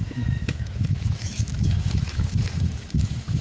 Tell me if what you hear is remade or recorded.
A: remade